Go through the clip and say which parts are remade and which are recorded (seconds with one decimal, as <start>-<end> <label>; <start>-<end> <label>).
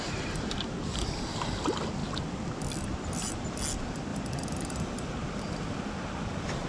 0.0-2.0 recorded; 2.0-3.3 remade; 3.3-4.1 recorded; 4.1-4.8 remade; 4.8-6.7 recorded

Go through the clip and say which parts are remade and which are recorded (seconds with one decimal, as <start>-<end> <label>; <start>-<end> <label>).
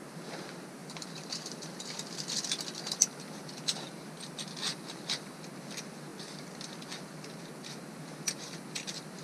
0.0-0.8 recorded; 0.8-1.6 remade; 1.6-9.2 recorded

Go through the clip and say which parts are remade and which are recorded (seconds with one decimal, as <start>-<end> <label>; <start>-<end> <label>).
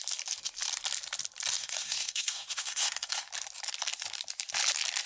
0.0-1.6 recorded; 1.6-3.3 remade; 3.3-5.1 recorded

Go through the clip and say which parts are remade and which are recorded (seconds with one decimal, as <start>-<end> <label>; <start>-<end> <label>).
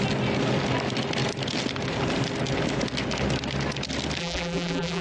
0.0-4.2 recorded; 4.2-5.0 remade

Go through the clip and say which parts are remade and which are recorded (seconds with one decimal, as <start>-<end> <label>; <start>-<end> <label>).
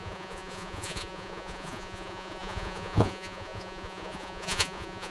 0.0-5.1 remade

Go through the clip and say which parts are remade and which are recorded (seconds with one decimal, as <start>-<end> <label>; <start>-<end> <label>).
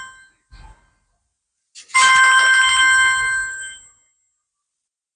0.0-5.2 recorded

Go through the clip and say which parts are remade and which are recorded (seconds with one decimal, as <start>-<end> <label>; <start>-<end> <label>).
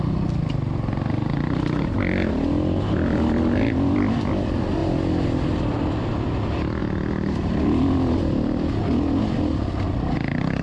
0.0-10.6 recorded